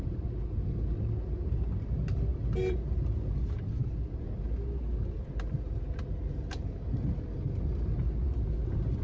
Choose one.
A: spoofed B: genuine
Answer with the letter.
B